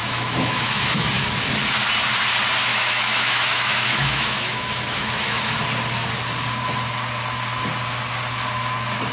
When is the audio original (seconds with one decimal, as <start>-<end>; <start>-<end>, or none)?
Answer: 1.1-2.7; 5.5-9.1